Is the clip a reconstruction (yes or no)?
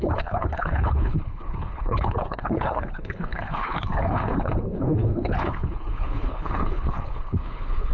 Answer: yes